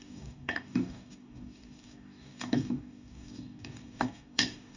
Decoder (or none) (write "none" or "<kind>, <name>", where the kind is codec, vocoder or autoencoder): codec, DAC